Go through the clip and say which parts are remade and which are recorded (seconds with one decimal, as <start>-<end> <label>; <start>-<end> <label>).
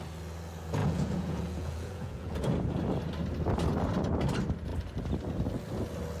0.0-0.8 recorded; 0.8-2.5 remade; 2.5-6.2 recorded